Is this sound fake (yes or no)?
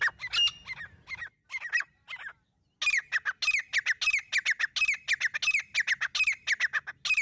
no